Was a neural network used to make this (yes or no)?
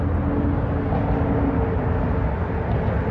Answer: no